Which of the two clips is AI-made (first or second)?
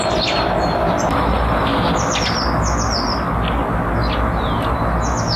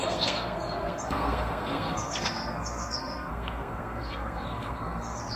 second